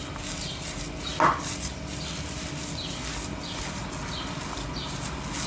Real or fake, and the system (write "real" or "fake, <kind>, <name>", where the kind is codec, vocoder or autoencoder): real